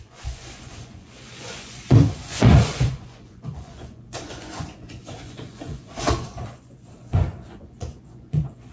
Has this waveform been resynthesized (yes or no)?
yes